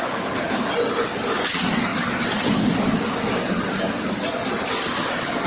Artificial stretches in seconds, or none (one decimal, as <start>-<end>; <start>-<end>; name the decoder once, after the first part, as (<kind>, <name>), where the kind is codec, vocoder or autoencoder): none